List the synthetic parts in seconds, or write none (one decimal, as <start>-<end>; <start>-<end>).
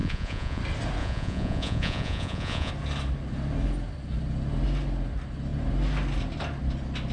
0.0-0.6; 1.0-2.7